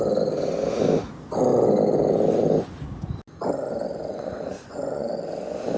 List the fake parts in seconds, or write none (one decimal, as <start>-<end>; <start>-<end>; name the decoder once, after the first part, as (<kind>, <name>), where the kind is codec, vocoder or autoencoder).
4.1-5.1 (vocoder, Vocos)